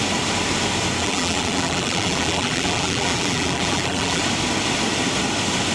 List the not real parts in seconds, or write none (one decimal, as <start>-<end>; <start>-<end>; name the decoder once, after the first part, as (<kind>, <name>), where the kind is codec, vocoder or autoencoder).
1.0-4.2 (vocoder, BigVGAN v2)